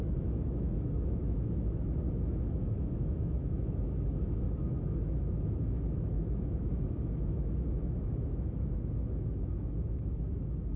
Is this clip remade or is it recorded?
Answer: remade